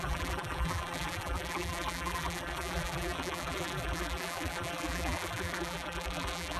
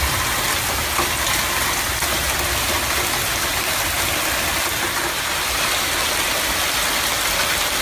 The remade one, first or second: first